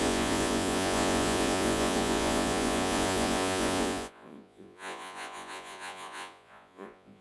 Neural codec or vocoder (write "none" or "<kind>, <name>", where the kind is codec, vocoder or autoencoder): vocoder, Vocos